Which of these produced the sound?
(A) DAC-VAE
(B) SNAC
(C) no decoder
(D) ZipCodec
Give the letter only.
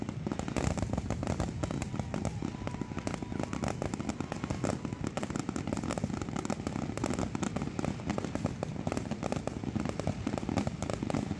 C